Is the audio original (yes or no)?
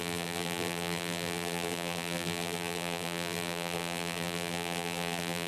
no